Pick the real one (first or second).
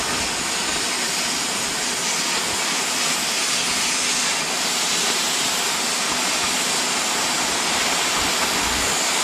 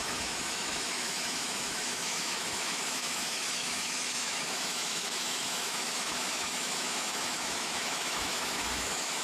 first